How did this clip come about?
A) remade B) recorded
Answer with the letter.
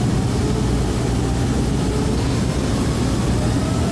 B